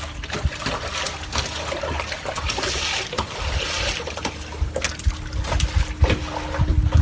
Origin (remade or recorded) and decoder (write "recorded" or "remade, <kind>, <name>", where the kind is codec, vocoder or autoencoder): recorded